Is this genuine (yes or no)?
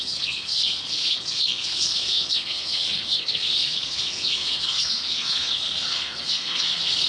no